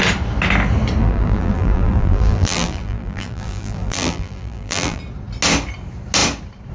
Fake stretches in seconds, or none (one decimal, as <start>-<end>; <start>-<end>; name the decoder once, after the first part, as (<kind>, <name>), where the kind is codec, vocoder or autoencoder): 1.0-5.0 (vocoder, BigVGAN v2)